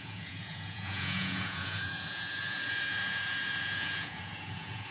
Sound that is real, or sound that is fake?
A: fake